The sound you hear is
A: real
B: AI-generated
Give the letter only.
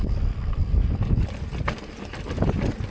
A